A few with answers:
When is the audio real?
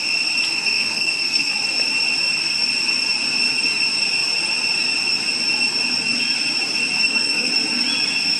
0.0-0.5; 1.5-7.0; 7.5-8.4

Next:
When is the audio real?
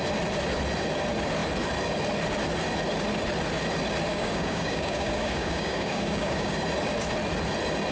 0.0-4.1; 6.5-7.9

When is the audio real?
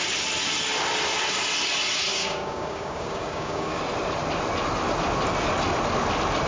0.0-2.1; 3.8-6.5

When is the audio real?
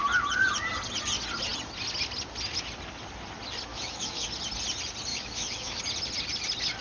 0.0-3.7; 4.3-5.1; 5.8-6.8